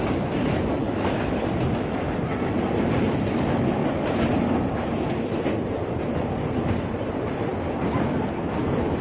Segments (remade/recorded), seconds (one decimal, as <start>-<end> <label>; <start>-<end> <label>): 0.0-0.8 remade; 0.8-2.6 recorded; 2.6-3.8 remade; 3.8-5.7 recorded; 5.7-7.5 remade; 7.5-9.0 recorded